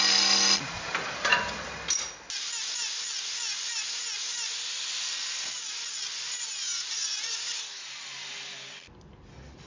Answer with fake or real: real